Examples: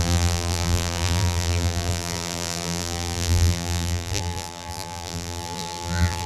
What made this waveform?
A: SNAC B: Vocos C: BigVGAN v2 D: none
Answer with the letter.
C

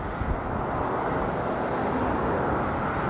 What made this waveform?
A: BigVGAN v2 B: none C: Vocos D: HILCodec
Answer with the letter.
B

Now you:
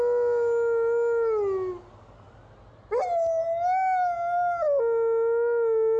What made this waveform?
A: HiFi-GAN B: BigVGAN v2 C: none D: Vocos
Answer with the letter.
C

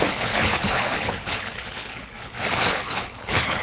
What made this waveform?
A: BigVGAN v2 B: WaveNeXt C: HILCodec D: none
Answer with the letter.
C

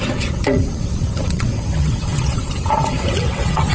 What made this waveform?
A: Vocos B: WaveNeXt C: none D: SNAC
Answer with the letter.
B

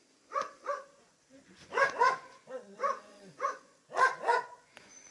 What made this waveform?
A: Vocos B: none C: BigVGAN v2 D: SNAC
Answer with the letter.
A